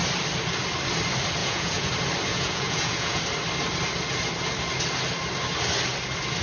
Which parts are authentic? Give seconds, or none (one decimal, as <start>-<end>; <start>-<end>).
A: 0.0-1.4; 1.9-2.3; 3.2-6.4